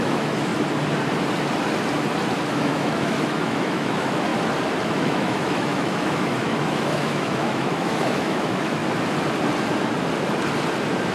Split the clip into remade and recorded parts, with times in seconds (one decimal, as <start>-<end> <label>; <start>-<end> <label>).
0.0-0.5 remade; 0.5-2.5 recorded; 2.5-4.3 remade; 4.3-4.8 recorded; 4.8-8.8 remade; 8.8-11.1 recorded